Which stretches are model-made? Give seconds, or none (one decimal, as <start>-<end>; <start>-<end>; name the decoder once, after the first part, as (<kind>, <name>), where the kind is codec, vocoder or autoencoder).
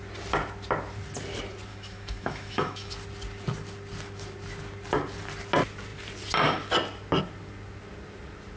1.7-2.9 (autoencoder, DAC-VAE)